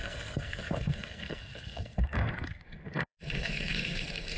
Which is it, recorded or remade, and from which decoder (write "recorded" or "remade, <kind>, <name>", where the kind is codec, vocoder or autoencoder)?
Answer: remade, codec, SNAC